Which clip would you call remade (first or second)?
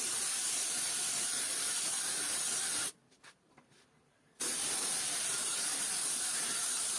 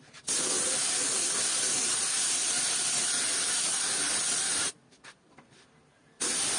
first